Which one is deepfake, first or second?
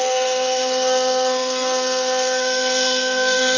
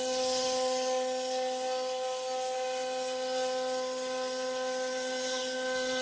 first